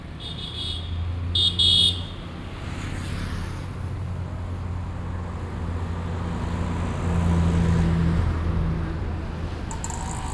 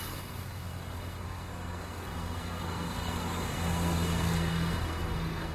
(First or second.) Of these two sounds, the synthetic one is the second